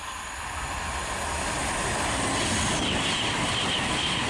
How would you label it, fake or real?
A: real